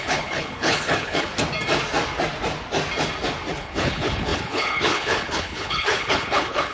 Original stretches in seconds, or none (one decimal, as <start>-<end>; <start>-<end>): 1.3-3.5